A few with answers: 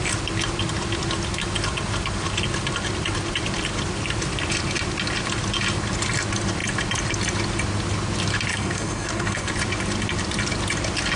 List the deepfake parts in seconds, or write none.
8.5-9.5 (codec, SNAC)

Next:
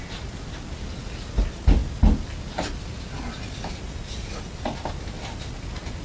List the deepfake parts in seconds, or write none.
none

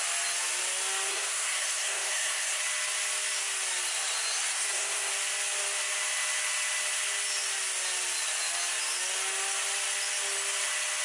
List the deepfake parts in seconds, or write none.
1.1-2.6 (codec, SNAC); 4.5-5.1

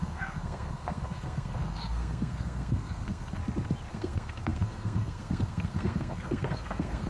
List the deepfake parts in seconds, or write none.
0.0-3.4 (codec, SNAC); 3.9-7.1

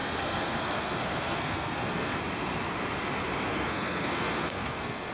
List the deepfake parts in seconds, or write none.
0.0-2.2 (codec, SNAC); 3.5-5.1

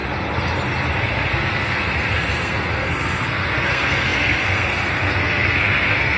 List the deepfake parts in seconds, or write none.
1.0-6.2 (codec, SNAC)